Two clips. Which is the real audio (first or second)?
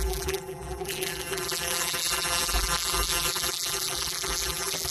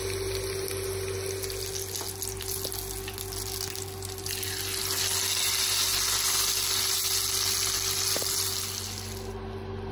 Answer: second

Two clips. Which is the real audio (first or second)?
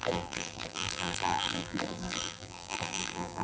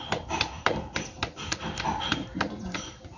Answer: second